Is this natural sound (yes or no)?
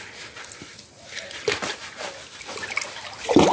yes